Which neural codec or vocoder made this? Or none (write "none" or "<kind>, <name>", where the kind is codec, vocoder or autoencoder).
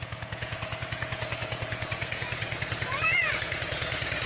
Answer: vocoder, Vocos